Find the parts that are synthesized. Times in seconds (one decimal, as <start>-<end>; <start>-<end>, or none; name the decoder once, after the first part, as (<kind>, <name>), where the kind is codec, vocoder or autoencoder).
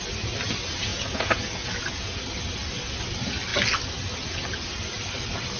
0.9-2.2 (vocoder, Vocos)